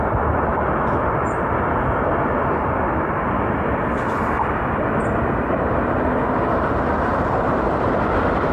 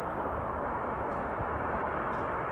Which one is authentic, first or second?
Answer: second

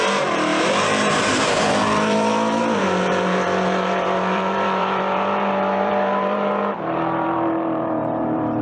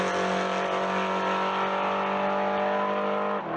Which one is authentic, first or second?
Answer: second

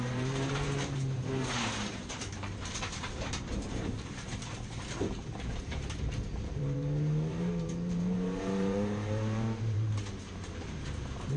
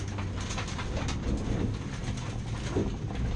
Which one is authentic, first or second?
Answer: second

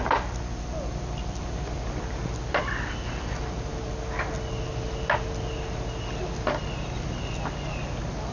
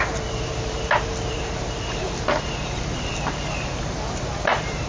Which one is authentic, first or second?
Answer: first